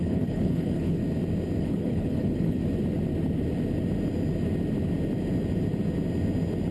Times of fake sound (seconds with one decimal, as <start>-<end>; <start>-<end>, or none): 0.0-1.0; 1.6-2.6